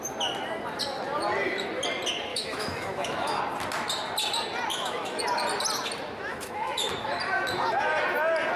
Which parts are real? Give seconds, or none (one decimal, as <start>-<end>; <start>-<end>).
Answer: 0.0-2.3; 3.4-4.7; 5.2-6.3; 6.9-8.6